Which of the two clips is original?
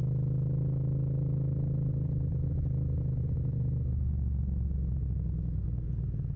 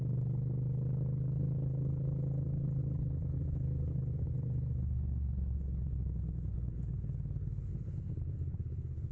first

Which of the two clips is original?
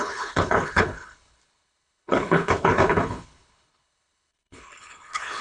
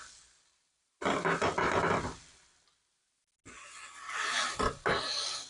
second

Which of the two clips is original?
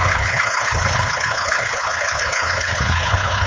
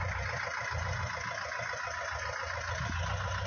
second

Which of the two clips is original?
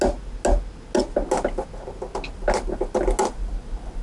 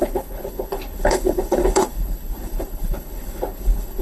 first